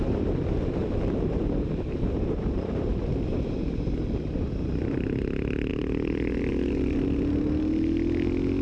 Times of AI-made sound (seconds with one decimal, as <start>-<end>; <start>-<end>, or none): 0.8-4.0